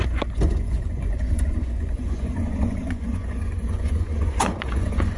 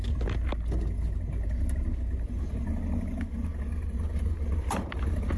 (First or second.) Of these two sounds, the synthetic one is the first